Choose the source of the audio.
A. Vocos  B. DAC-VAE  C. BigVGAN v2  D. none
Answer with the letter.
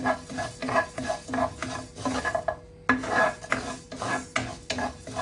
D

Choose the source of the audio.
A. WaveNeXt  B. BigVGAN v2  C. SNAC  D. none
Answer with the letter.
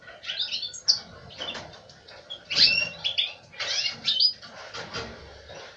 D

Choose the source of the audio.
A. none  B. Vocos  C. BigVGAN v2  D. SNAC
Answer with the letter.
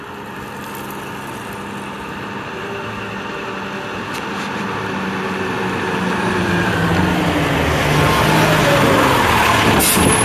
A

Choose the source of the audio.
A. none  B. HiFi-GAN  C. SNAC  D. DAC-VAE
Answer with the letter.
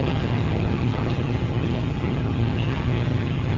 B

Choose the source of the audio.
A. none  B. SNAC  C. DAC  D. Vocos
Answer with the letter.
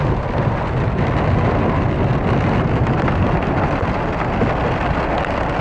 A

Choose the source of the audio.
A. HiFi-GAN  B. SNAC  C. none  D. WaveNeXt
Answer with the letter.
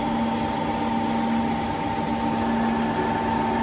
C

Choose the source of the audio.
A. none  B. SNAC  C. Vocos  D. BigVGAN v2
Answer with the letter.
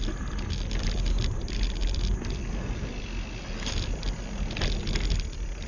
A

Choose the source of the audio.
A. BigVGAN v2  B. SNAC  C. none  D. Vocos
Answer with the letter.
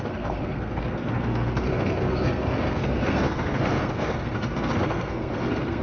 B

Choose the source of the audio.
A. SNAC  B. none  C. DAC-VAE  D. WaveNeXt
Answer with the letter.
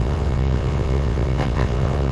D